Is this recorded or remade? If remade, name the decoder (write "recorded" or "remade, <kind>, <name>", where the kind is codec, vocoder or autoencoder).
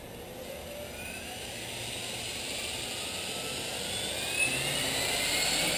recorded